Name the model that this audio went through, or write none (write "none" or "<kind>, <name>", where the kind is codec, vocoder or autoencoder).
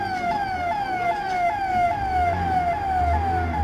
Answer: none